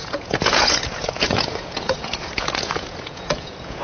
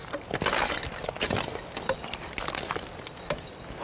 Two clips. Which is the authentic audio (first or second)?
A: second